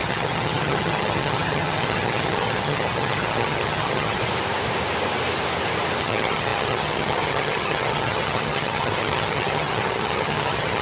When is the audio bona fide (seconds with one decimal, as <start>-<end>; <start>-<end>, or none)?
4.2-6.0